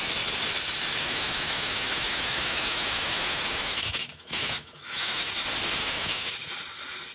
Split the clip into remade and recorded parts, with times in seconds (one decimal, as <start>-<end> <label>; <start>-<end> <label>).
0.0-1.0 recorded; 1.0-5.3 remade; 5.3-5.8 recorded; 5.8-6.3 remade; 6.3-7.1 recorded